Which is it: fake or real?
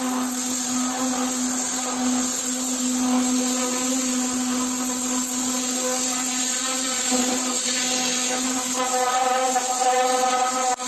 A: real